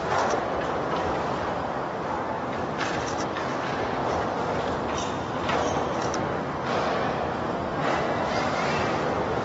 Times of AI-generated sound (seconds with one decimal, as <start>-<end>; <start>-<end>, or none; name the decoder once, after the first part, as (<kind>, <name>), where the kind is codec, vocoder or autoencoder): none